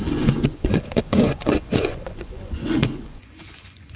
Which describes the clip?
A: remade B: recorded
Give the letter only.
A